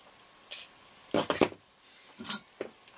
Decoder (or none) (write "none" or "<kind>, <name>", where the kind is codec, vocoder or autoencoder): none